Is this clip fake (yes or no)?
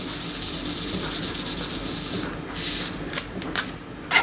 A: no